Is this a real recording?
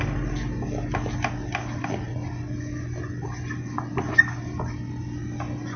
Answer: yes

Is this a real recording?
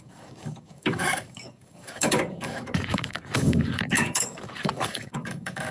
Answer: no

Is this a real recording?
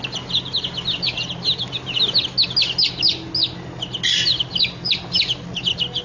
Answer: yes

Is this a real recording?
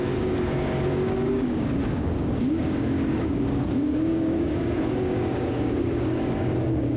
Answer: no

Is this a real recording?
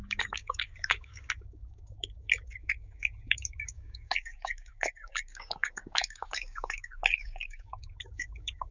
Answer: no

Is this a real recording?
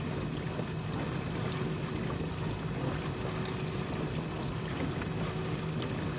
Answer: yes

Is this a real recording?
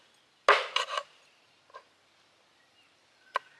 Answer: yes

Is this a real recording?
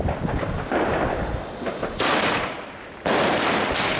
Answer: yes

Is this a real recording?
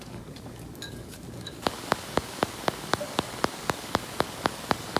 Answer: no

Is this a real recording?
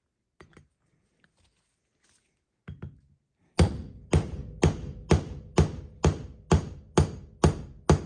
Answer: yes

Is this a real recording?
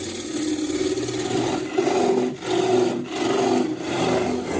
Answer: yes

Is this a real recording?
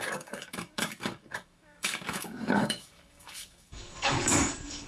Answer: no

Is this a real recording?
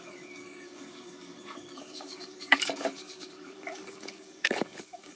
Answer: no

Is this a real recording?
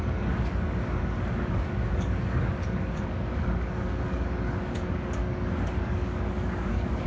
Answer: no